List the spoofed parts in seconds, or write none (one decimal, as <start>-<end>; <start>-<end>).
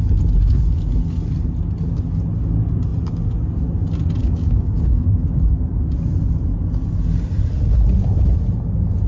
4.2-5.4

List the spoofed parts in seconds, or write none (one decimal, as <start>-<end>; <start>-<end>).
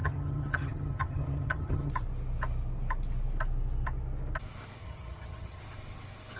0.0-1.9; 4.8-5.6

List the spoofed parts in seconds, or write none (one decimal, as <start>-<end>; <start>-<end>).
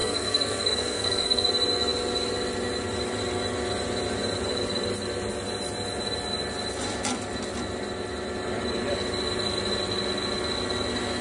0.0-1.5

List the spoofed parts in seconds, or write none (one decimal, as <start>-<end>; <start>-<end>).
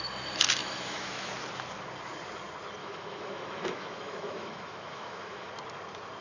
0.6-1.3; 2.8-5.5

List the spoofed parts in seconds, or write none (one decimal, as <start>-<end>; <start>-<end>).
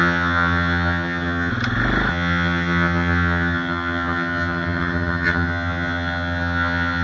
0.0-1.5; 2.1-7.0